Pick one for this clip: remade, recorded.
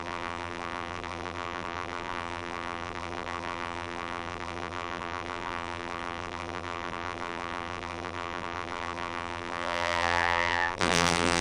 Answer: remade